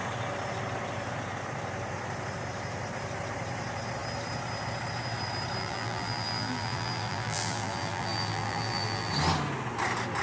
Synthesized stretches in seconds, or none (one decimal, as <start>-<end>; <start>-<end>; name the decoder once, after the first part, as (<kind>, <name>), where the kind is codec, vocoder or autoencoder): 5.6-9.1 (vocoder, BigVGAN v2)